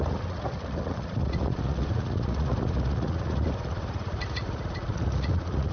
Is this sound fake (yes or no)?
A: yes